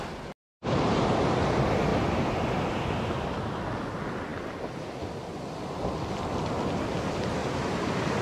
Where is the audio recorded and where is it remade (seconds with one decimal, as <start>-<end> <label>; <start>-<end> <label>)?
0.0-7.4 recorded; 7.4-8.2 remade

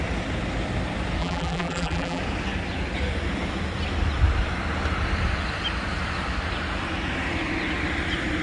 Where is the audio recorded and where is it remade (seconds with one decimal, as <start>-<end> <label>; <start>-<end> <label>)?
0.0-1.2 recorded; 1.2-2.2 remade; 2.2-8.4 recorded

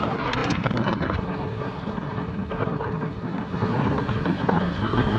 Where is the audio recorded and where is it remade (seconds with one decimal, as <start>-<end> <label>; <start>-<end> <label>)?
0.0-5.2 remade